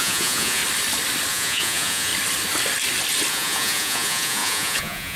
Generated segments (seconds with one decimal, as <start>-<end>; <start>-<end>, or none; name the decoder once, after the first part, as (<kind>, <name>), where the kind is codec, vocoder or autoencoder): 0.0-0.6 (vocoder, Vocos); 1.3-2.1; 3.3-5.2